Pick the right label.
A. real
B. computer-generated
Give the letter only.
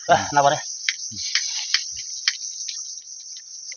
B